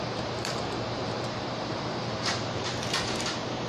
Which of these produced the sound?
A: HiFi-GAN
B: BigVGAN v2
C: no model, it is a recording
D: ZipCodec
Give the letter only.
B